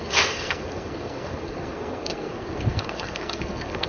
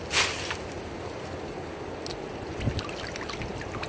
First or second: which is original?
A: second